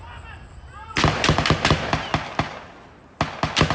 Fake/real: real